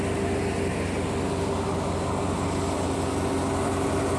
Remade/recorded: recorded